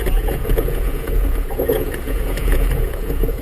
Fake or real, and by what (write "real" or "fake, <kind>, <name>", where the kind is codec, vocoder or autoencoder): fake, vocoder, Vocos